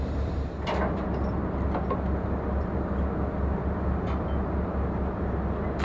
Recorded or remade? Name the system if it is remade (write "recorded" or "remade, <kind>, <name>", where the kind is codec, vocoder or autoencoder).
recorded